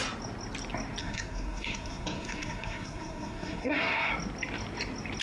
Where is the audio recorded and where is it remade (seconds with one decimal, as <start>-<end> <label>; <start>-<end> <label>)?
0.0-1.0 recorded; 1.0-4.1 remade; 4.1-5.2 recorded